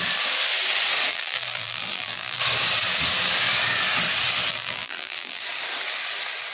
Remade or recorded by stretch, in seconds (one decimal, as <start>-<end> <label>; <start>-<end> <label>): 0.0-1.1 recorded; 1.1-2.4 remade; 2.4-4.5 recorded; 4.5-5.4 remade; 5.4-6.5 recorded